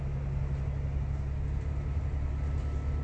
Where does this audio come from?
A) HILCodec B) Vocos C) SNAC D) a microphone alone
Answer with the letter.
D